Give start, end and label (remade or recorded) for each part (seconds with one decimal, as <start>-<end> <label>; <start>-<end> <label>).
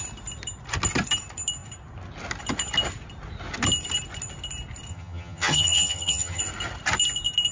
0.0-4.9 recorded; 4.9-6.4 remade; 6.4-7.5 recorded